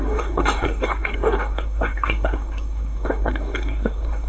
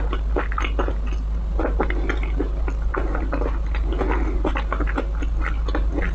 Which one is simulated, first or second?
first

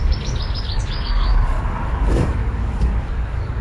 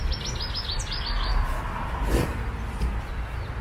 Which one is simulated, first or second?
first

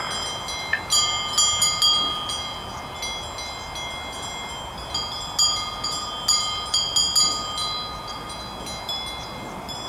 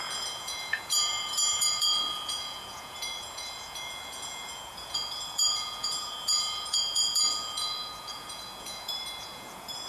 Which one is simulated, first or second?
second